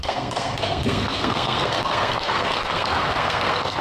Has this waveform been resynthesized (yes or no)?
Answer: yes